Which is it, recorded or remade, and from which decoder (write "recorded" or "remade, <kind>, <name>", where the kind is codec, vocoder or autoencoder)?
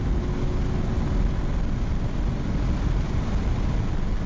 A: recorded